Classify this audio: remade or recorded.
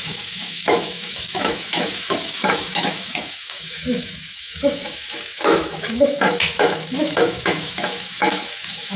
remade